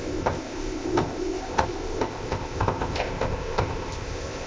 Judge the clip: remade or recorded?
remade